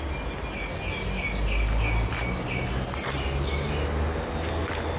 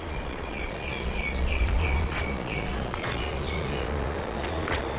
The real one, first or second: first